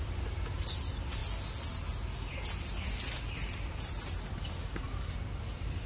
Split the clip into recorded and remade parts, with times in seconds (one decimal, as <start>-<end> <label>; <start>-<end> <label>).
0.0-5.9 recorded